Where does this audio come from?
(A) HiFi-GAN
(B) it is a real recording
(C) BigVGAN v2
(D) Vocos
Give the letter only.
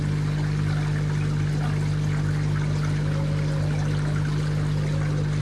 B